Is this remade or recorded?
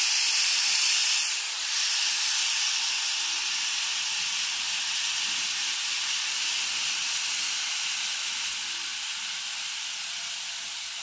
recorded